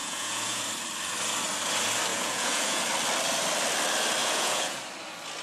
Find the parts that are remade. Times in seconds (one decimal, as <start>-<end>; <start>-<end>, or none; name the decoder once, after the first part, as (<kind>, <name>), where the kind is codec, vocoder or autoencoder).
0.0-0.6 (vocoder, Vocos); 2.1-2.8; 4.2-4.8